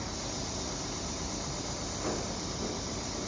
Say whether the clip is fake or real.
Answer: real